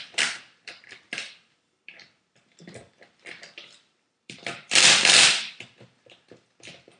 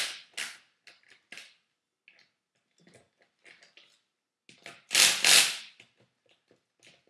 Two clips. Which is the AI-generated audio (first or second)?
first